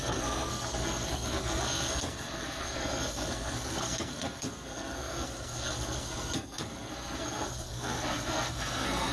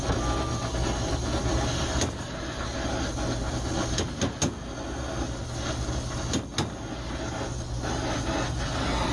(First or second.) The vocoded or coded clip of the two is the first